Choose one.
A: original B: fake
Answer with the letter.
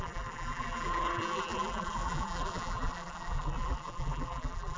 B